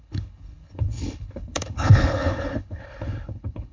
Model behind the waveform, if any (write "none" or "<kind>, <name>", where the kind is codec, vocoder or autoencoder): codec, HILCodec